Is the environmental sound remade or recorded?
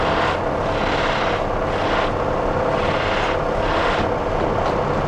recorded